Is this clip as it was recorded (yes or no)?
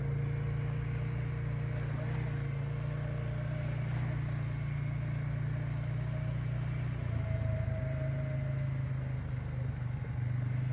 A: yes